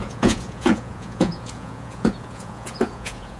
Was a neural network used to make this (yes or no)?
yes